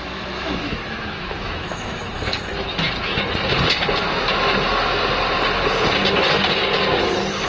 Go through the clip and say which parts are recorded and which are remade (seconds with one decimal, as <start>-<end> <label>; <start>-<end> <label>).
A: 0.0-2.5 remade; 2.5-7.0 recorded; 7.0-7.5 remade